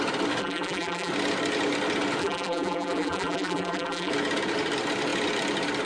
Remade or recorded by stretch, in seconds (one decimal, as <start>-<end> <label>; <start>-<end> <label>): 0.0-0.4 recorded; 0.4-1.1 remade; 1.1-2.2 recorded; 2.2-4.1 remade; 4.1-5.9 recorded